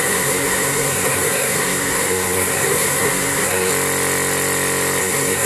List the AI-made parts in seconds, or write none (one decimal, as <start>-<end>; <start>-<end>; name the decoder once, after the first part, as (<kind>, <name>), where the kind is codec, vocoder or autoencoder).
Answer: 0.0-3.7 (codec, SNAC); 5.0-5.5